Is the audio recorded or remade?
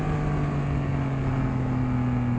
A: recorded